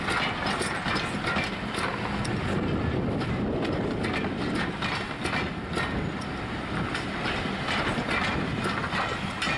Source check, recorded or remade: recorded